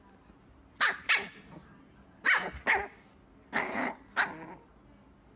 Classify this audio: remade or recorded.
recorded